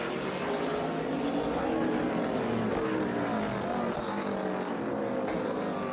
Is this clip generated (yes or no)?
no